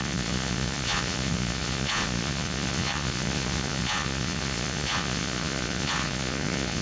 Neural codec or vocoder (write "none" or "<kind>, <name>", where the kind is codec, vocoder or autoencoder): vocoder, Vocos